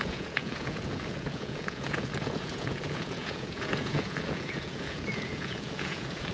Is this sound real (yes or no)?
no